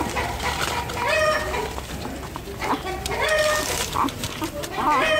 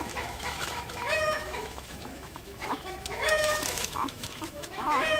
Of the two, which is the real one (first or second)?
first